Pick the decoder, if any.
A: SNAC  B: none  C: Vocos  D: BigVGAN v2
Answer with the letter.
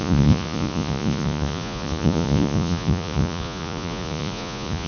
C